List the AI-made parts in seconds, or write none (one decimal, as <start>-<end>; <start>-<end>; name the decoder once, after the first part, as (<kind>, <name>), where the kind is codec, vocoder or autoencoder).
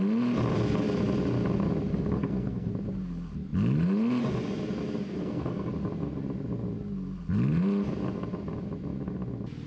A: 1.9-2.7 (codec, SNAC); 5.1-5.7